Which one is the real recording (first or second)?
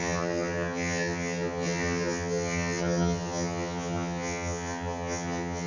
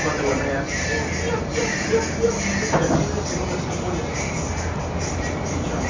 second